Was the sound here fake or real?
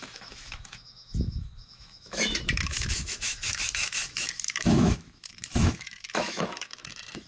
fake